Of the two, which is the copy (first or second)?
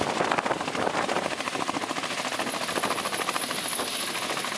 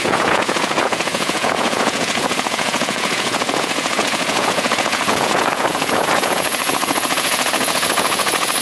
second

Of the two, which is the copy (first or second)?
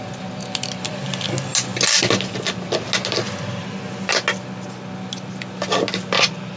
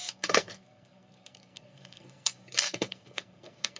second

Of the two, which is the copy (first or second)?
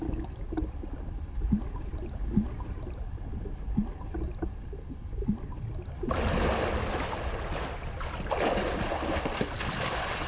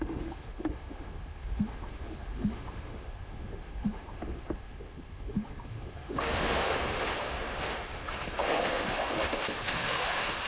second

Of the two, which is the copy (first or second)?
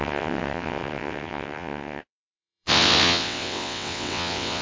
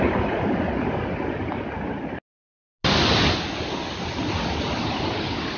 first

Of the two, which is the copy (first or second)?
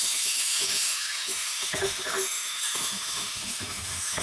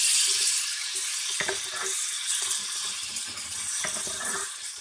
first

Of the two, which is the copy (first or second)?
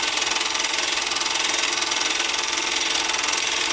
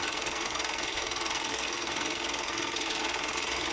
second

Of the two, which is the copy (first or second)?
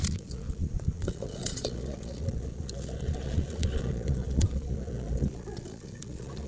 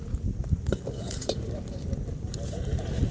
first